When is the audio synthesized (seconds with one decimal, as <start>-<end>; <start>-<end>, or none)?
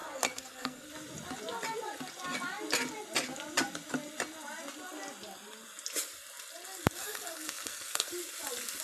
0.0-0.9; 7.0-8.1